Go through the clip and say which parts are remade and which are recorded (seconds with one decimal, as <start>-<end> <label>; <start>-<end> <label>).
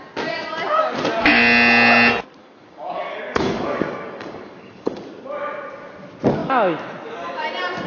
0.0-2.4 recorded; 2.4-5.0 remade; 5.0-7.9 recorded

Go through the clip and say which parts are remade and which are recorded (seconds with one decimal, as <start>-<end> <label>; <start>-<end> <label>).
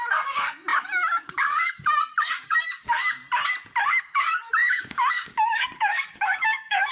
0.0-3.2 remade; 3.2-4.0 recorded; 4.0-6.9 remade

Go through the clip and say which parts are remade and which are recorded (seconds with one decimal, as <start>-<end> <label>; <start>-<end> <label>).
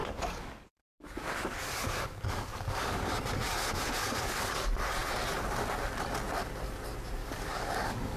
0.0-3.1 remade; 3.1-4.0 recorded; 4.0-4.5 remade; 4.5-7.2 recorded; 7.2-8.2 remade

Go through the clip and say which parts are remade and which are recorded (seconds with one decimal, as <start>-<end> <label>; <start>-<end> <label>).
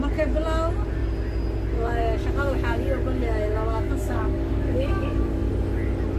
0.0-3.6 recorded; 3.6-5.5 remade; 5.5-6.2 recorded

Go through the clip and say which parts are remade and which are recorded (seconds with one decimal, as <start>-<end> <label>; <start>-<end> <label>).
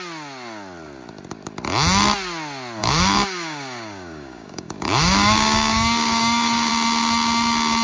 0.0-2.8 recorded; 2.8-6.7 remade; 6.7-7.8 recorded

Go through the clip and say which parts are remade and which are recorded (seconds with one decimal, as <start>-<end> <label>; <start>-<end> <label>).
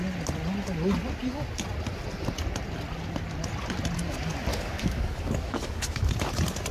0.0-4.5 recorded; 4.5-6.1 remade; 6.1-6.7 recorded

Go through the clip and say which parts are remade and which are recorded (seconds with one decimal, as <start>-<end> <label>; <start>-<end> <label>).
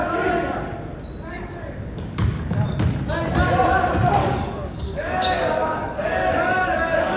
0.0-1.3 recorded; 1.3-2.7 remade; 2.7-4.2 recorded; 4.2-7.2 remade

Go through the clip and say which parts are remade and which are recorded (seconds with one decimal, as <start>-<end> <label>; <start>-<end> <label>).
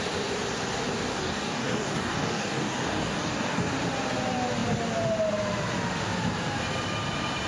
0.0-1.1 recorded; 1.1-3.7 remade; 3.7-7.5 recorded